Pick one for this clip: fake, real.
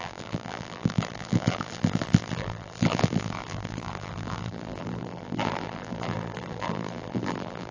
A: fake